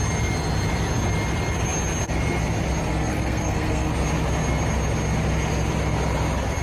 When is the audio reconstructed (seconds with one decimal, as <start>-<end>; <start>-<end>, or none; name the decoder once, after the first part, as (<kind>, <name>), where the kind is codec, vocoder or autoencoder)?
2.9-3.9 (codec, SNAC)